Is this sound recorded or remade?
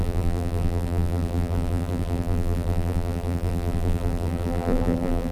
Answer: remade